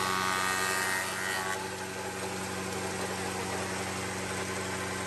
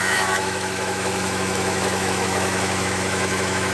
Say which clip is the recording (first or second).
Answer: first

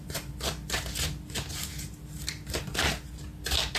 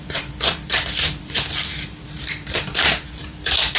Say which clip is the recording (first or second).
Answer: first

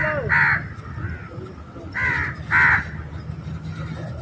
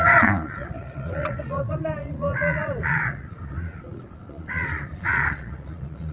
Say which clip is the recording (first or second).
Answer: first